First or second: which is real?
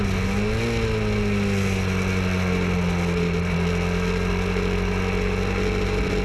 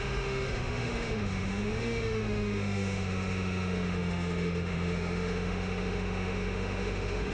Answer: first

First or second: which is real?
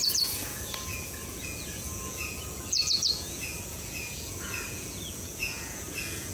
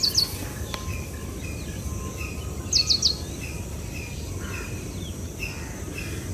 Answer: second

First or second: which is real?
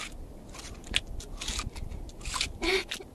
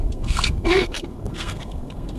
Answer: first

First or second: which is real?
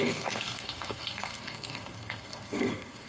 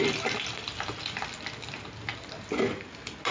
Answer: second